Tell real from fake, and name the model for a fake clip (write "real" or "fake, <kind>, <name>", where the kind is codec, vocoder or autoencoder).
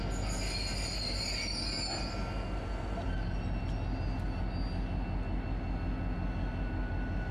real